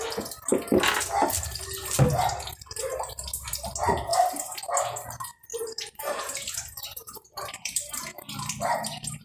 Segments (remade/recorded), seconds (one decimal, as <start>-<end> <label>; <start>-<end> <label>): 0.0-4.1 recorded; 4.1-4.6 remade; 4.6-5.5 recorded; 5.5-9.2 remade